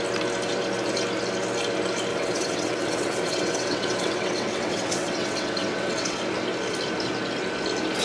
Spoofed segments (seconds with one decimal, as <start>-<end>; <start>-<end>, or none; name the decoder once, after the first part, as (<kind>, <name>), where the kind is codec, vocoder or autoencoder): 2.1-6.2 (vocoder, WaveNeXt)